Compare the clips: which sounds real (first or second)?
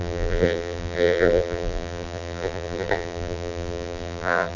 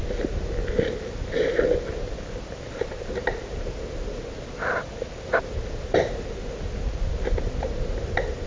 second